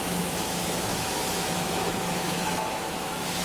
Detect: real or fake fake